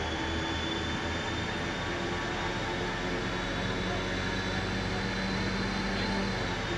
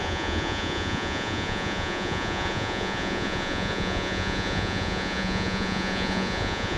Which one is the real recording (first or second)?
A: first